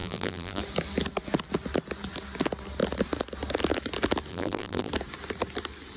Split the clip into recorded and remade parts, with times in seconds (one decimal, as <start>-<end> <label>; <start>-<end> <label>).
0.0-0.6 remade; 0.6-4.3 recorded; 4.3-4.9 remade; 4.9-6.0 recorded